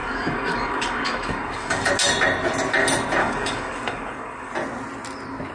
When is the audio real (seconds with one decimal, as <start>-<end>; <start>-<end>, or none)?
1.9-3.2; 4.5-5.5